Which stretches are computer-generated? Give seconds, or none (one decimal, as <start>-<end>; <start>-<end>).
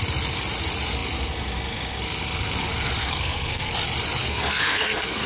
3.0-3.7; 4.2-5.3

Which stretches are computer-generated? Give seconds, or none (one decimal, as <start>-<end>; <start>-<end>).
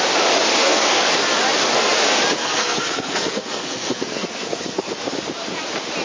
0.6-1.1; 2.4-4.9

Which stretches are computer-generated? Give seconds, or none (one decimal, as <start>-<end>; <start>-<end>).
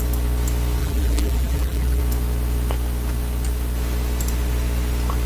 0.8-2.0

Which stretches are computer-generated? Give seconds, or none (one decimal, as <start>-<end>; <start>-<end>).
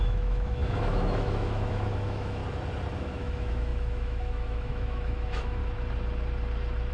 0.0-2.4; 3.0-5.6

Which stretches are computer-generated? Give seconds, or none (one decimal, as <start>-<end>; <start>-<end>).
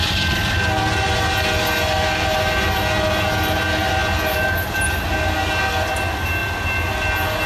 none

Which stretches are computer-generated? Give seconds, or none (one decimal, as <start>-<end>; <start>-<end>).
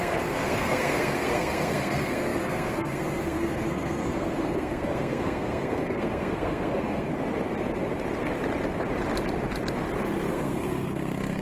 0.0-7.1; 10.3-11.4